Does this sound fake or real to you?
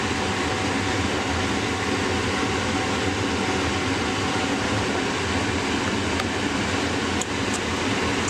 real